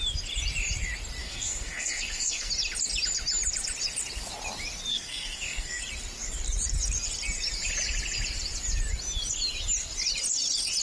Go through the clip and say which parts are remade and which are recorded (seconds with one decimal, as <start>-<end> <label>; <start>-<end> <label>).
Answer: 0.0-1.2 recorded; 1.2-2.5 remade; 2.5-4.9 recorded; 4.9-5.8 remade; 5.8-10.8 recorded